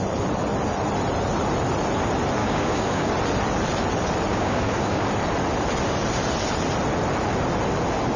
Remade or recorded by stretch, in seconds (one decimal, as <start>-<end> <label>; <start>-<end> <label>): 0.0-2.4 recorded; 2.4-3.1 remade; 3.1-4.3 recorded; 4.3-5.1 remade; 5.1-8.2 recorded